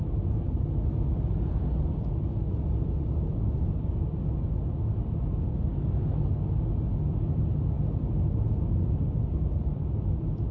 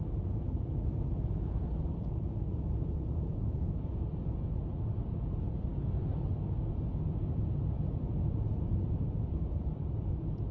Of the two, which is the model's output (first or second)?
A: second